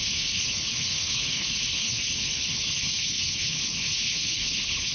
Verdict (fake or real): fake